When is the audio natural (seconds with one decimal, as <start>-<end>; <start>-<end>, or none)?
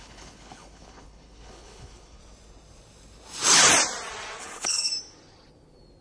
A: 2.2-4.4; 4.9-6.0